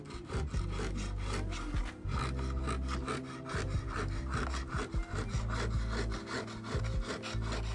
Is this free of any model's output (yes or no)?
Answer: yes